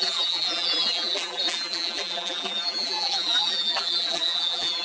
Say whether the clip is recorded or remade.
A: remade